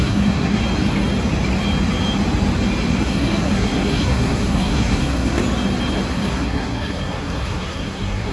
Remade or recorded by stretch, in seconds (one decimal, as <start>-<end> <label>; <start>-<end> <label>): 0.0-0.6 remade; 0.6-2.9 recorded; 2.9-5.4 remade; 5.4-6.1 recorded; 6.1-8.3 remade